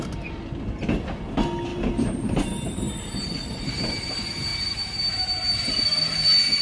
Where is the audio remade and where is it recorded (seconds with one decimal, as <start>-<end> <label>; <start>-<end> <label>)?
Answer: 0.0-1.7 recorded; 1.7-4.1 remade; 4.1-4.5 recorded; 4.5-5.8 remade; 5.8-6.6 recorded